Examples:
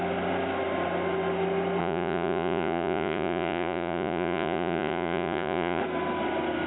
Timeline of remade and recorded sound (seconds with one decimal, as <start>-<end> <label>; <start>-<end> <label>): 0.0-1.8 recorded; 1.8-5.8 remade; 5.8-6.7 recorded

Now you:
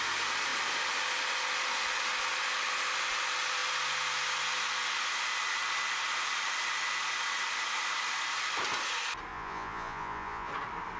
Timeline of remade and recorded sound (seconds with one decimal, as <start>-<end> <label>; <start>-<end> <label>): 0.0-9.3 recorded; 9.3-10.5 remade; 10.5-11.0 recorded

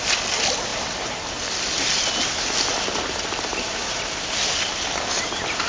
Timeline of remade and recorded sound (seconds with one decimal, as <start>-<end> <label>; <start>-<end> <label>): 0.0-5.7 recorded